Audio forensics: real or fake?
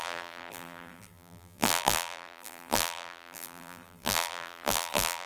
fake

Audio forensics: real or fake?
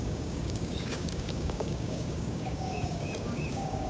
fake